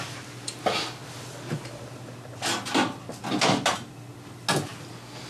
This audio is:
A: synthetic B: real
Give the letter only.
B